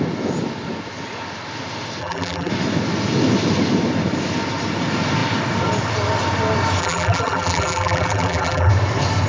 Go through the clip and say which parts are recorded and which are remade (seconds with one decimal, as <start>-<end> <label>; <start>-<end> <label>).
0.0-2.0 recorded; 2.0-2.5 remade; 2.5-6.8 recorded; 6.8-8.7 remade; 8.7-9.3 recorded